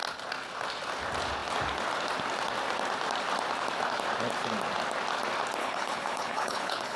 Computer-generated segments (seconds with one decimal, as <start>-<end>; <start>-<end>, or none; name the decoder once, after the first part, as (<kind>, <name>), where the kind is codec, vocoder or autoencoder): 5.6-7.0 (codec, HILCodec)